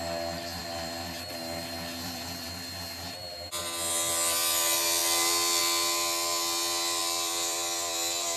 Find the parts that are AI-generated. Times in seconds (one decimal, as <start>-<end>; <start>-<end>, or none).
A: 0.6-3.6; 7.0-8.4